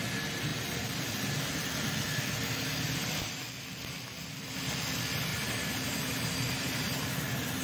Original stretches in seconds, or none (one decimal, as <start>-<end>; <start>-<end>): 0.0-0.5; 1.1-5.3; 7.1-7.6